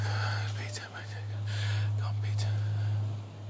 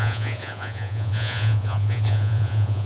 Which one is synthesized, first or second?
second